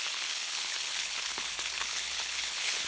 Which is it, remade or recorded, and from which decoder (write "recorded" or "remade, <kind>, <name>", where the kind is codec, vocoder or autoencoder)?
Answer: remade, codec, HILCodec